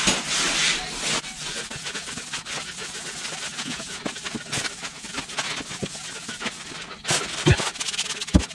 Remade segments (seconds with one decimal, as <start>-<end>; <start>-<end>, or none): 3.5-4.0